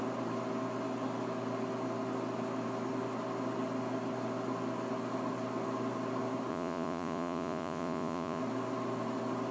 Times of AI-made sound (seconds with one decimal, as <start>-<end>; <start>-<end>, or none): 6.5-8.4